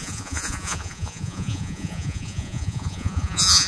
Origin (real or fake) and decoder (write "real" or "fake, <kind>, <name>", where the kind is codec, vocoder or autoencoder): fake, vocoder, Vocos